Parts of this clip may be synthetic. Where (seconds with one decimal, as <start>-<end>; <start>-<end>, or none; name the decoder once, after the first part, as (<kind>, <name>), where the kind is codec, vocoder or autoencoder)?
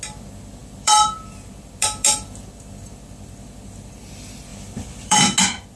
0.6-4.1 (vocoder, BigVGAN v2); 4.5-5.2